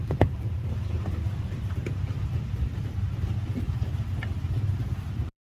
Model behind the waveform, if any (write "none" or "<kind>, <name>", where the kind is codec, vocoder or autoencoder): vocoder, BigVGAN v2